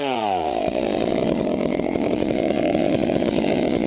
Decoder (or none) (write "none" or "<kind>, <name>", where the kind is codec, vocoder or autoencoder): vocoder, Vocos